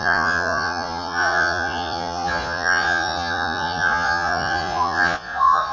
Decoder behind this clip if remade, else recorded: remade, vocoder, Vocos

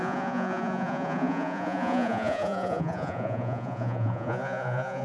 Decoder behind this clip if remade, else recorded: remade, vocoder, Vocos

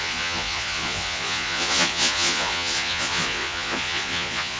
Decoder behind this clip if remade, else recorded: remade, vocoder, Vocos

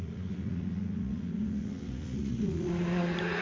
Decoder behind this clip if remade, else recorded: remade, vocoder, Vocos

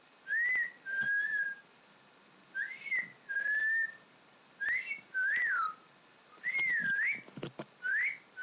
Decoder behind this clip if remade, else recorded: recorded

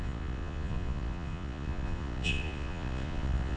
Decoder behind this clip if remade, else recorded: remade, vocoder, Vocos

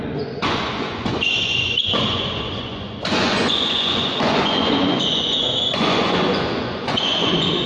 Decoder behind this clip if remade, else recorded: remade, vocoder, Vocos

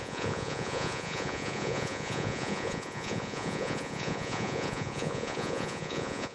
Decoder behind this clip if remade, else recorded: remade, vocoder, Vocos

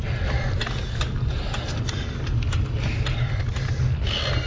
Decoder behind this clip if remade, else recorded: recorded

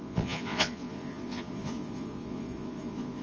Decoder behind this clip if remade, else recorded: remade, vocoder, Vocos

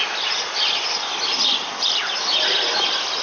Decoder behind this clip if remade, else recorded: recorded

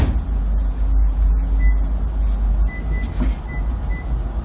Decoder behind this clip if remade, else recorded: recorded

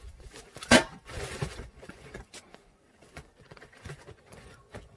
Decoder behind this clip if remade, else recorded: remade, vocoder, Vocos